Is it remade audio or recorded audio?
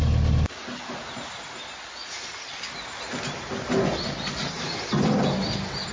recorded